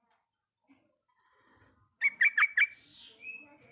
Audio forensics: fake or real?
real